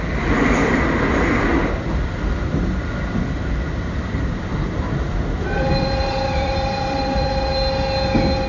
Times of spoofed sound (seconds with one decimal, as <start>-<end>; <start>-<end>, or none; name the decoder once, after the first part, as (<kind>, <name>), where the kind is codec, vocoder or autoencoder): 4.5-7.3 (vocoder, BigVGAN v2)